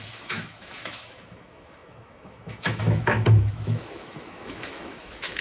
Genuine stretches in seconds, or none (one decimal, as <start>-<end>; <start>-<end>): none